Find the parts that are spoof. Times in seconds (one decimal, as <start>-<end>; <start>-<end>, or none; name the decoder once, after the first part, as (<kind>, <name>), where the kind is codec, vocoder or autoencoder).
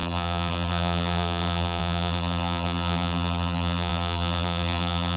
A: 0.0-5.2 (vocoder, BigVGAN v2)